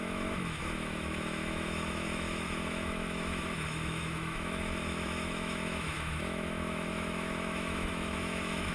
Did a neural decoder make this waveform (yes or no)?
yes